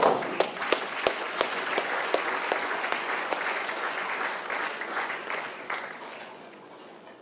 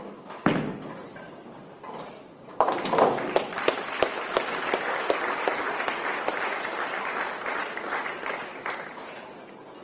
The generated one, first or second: first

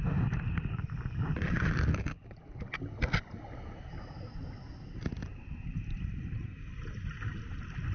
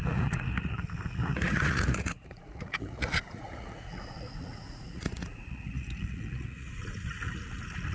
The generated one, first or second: second